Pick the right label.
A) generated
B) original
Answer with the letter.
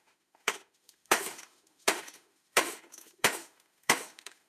A